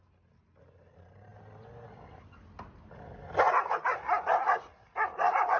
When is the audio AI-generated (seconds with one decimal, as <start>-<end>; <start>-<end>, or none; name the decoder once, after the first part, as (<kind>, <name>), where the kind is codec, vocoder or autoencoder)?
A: none